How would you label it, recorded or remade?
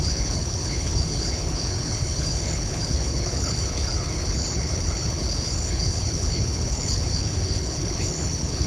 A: remade